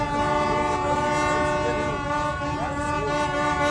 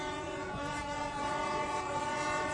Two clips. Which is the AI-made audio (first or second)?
second